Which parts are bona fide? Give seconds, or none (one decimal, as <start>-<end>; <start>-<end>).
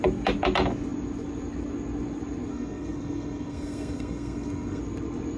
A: 0.0-2.5; 4.8-5.4